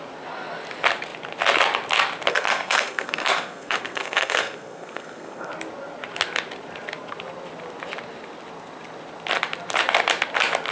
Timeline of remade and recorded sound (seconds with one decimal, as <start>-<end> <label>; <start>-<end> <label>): 0.0-2.3 recorded; 2.3-5.5 remade; 5.5-10.7 recorded